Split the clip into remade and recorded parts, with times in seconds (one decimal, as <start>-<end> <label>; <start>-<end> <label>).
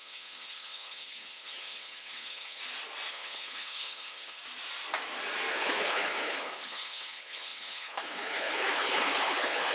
0.0-2.6 remade; 2.6-3.1 recorded; 3.1-4.4 remade; 4.4-5.5 recorded; 5.5-9.7 remade